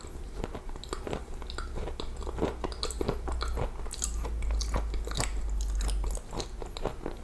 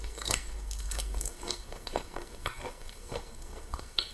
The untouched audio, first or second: first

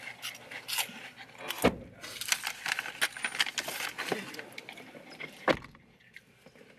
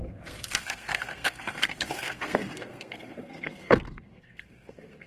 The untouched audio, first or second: first